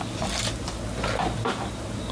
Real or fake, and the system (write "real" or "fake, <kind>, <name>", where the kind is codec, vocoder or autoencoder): real